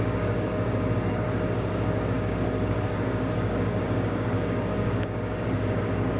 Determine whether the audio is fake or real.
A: fake